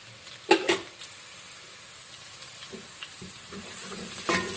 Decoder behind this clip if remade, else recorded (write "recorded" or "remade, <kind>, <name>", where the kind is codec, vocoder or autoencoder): recorded